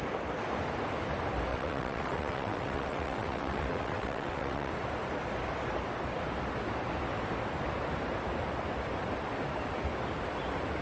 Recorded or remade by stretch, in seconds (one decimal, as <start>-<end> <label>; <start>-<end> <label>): 0.0-1.5 recorded; 1.5-4.7 remade; 4.7-10.8 recorded